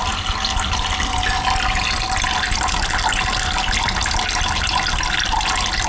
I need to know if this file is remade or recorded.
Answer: recorded